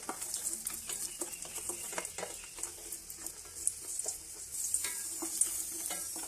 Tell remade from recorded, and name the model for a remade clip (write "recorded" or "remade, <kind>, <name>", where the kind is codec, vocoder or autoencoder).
recorded